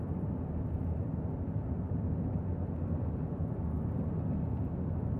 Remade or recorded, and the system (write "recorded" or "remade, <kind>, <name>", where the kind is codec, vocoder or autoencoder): recorded